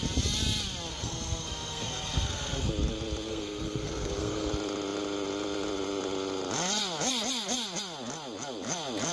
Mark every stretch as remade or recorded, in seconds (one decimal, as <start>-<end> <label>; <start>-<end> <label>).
0.0-0.9 recorded; 0.9-2.7 remade; 2.7-3.3 recorded; 3.3-4.5 remade; 4.5-9.1 recorded